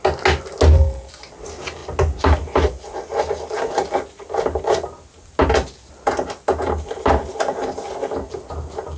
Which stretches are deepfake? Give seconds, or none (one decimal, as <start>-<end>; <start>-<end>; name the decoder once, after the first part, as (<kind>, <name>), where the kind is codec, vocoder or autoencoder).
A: none

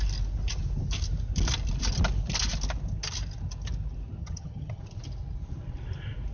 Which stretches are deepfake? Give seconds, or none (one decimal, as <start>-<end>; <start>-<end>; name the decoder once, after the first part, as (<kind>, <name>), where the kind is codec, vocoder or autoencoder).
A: 4.2-4.8 (vocoder, HiFi-GAN)